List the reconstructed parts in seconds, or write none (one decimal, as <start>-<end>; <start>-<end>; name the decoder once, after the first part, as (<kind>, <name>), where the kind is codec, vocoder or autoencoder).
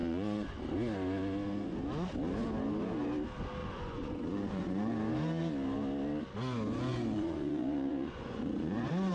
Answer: 0.0-0.6 (vocoder, Vocos); 3.6-4.9; 6.9-9.1